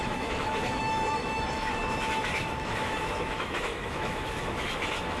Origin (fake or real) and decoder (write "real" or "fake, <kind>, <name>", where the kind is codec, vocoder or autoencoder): fake, autoencoder, DAC-VAE